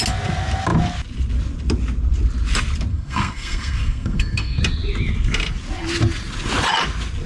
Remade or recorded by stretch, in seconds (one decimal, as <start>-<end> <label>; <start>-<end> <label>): 0.0-2.9 recorded; 2.9-4.6 remade; 4.6-7.3 recorded